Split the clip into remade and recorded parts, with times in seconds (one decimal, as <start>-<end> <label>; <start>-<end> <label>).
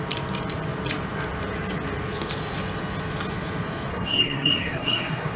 0.0-3.9 recorded; 3.9-5.4 remade